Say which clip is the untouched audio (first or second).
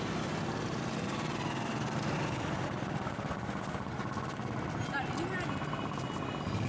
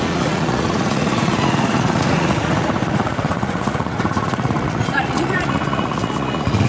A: first